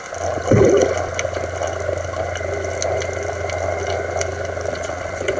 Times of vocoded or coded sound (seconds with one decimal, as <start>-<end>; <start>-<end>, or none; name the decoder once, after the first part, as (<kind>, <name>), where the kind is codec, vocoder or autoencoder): 4.7-5.4 (vocoder, Vocos)